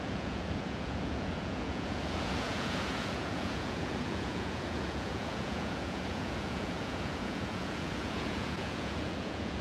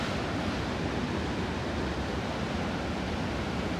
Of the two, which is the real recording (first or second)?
second